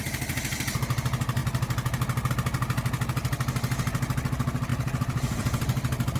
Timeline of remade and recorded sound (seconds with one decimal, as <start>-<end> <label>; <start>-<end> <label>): 0.0-4.7 recorded; 4.7-6.2 remade